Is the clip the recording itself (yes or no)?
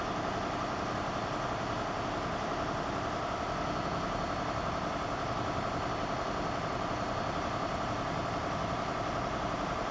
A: yes